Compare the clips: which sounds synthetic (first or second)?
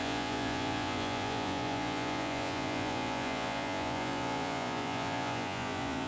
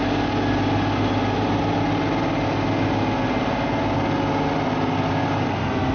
first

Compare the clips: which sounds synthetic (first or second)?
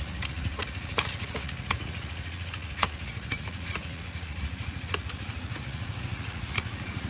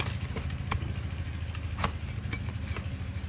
first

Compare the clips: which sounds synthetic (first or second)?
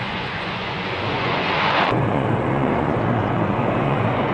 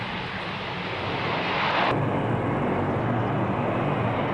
first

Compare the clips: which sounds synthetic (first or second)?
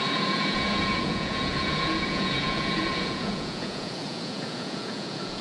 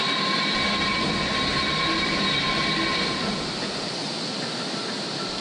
first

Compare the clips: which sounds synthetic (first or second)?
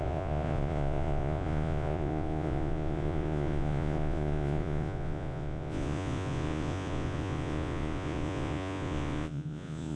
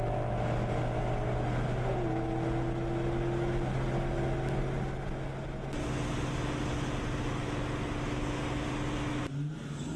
first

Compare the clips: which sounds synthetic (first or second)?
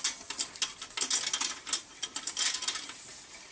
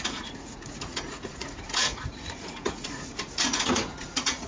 second